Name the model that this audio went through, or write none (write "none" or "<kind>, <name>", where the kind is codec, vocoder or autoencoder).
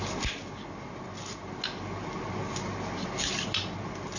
none